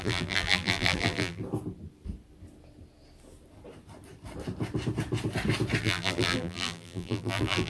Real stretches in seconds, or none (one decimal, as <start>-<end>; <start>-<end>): 1.4-5.8